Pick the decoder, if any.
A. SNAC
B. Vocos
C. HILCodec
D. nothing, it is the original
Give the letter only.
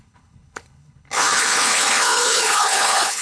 C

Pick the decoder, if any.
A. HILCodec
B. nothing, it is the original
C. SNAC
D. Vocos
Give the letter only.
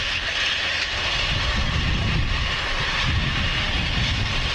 B